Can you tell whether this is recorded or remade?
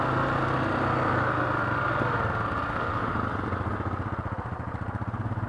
recorded